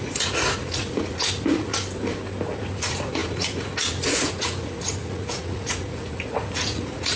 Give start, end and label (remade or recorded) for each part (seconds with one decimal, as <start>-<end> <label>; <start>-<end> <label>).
0.0-1.7 remade; 1.7-2.6 recorded; 2.6-7.2 remade